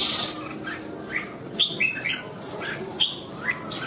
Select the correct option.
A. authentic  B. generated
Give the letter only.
A